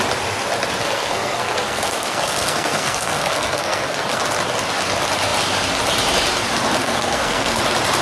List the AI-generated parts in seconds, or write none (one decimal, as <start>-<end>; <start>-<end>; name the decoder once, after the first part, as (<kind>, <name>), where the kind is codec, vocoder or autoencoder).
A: 0.8-4.2 (codec, SNAC); 6.8-7.6